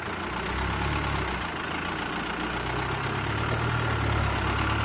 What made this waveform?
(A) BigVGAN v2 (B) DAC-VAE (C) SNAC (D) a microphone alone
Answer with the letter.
D